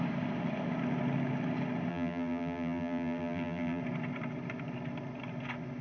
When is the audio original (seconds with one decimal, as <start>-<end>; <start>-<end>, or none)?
0.0-1.9; 3.8-5.8